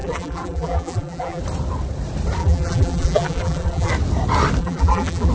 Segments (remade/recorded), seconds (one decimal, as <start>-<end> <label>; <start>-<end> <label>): 0.0-1.4 remade; 1.4-2.4 recorded; 2.4-3.9 remade; 3.9-4.6 recorded; 4.6-5.3 remade